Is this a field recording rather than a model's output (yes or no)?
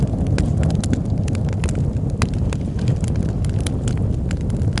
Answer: yes